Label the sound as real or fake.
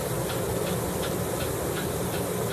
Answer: real